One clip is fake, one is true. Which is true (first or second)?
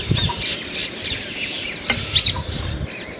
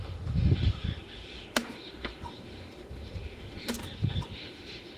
first